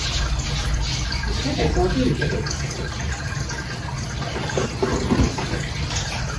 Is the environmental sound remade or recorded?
recorded